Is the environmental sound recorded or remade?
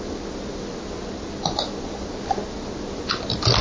recorded